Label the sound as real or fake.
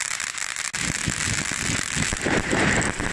real